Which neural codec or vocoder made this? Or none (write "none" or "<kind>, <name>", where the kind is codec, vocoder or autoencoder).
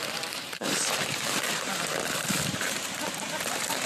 vocoder, BigVGAN v2